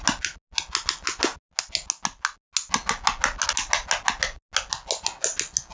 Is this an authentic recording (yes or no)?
yes